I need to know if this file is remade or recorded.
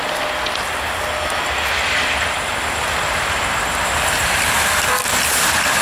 recorded